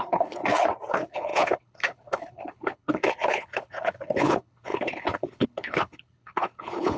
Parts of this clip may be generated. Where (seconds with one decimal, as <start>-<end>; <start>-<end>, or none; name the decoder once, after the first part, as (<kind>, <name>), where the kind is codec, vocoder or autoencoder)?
0.0-0.4 (codec, HILCodec); 0.9-7.0